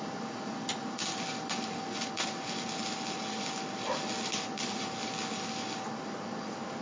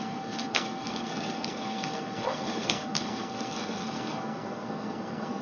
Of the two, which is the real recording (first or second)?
first